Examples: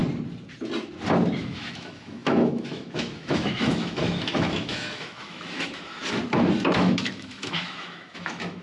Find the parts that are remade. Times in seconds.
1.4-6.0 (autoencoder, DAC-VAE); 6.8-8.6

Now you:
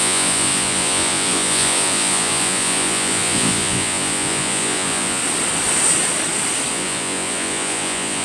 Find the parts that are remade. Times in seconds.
0.0-5.2 (vocoder, Vocos); 6.7-8.2

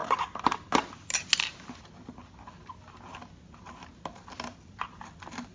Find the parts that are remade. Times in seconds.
none

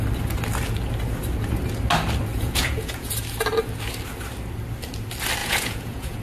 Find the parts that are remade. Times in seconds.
2.3-3.1 (vocoder, Vocos); 5.4-6.2

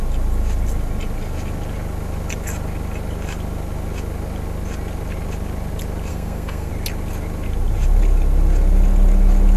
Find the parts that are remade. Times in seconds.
6.1-6.7 (codec, SNAC)

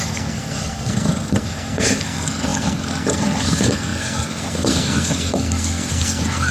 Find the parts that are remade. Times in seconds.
0.0-6.5 (codec, SNAC)

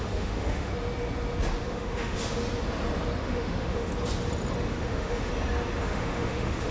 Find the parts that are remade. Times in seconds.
0.0-0.7 (autoencoder, DAC-VAE); 1.6-2.4; 3.2-3.9; 4.7-5.3; 5.8-6.7